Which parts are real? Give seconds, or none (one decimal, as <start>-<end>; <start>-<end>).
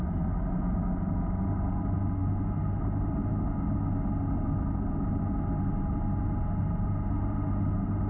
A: 0.0-8.1